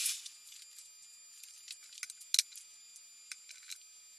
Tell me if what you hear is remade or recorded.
recorded